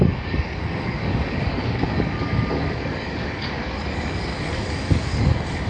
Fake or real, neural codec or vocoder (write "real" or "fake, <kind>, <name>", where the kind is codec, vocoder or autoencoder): fake, codec, DAC